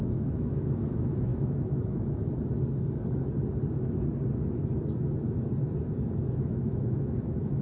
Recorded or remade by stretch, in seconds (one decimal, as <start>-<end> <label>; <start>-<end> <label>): 0.0-2.2 remade; 2.2-6.2 recorded; 6.2-7.6 remade